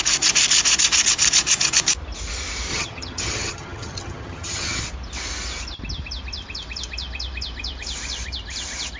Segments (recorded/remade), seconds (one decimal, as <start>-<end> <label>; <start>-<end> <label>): 0.0-2.7 recorded; 2.7-4.8 remade; 4.8-9.0 recorded